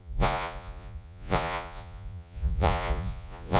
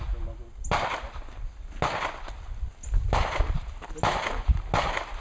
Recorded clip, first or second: second